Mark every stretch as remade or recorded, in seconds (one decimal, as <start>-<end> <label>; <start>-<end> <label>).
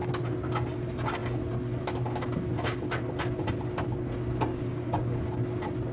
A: 0.0-4.5 recorded; 4.5-5.2 remade; 5.2-5.9 recorded